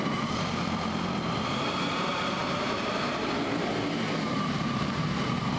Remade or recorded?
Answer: remade